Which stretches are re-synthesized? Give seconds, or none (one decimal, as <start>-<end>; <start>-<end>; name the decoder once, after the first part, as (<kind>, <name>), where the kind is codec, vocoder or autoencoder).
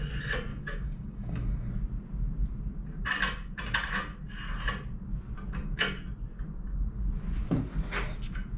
0.5-1.7 (codec, DAC)